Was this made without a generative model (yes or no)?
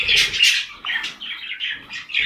yes